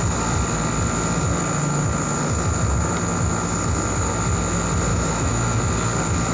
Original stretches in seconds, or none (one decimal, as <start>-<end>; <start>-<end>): 0.0-4.9; 5.6-6.3